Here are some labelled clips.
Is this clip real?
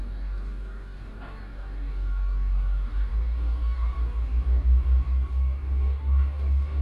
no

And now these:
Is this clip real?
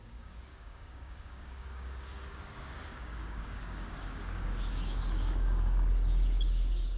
no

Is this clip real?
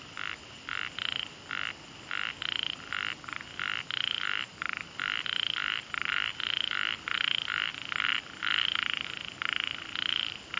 yes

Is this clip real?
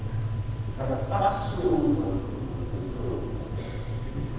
yes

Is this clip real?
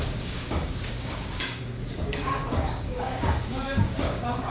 no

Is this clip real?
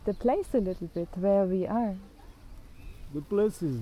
yes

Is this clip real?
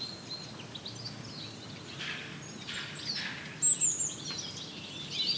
yes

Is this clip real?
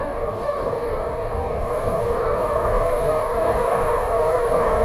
no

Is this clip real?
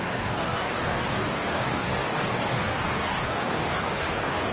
no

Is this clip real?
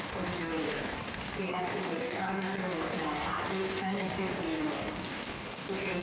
no